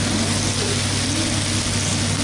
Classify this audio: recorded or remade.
recorded